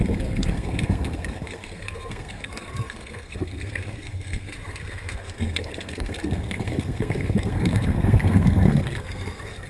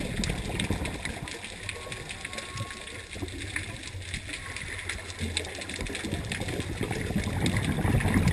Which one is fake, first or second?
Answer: first